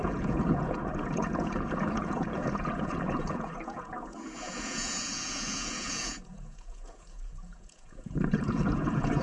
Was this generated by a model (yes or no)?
yes